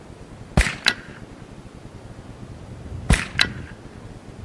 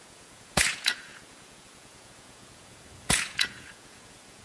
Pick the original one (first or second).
first